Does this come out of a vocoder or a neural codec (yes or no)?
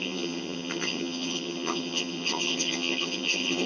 yes